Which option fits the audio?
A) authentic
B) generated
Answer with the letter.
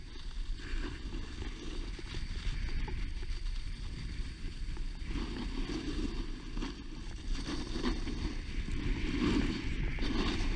A